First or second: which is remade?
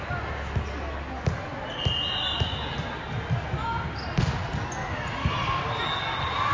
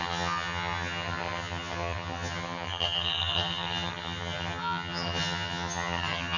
second